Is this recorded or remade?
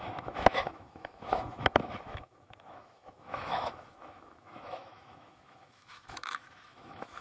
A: remade